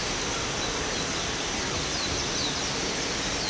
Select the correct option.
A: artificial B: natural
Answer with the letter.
B